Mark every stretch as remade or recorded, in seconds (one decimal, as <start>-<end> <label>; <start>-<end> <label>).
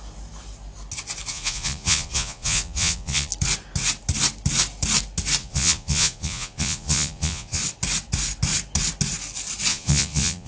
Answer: 0.0-1.3 recorded; 1.3-3.3 remade; 3.3-5.4 recorded; 5.4-7.6 remade; 7.6-9.7 recorded; 9.7-10.5 remade